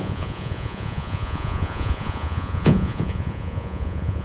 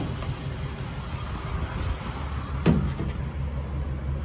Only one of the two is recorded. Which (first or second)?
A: second